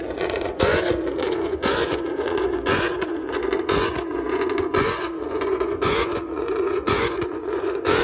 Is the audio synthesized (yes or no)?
yes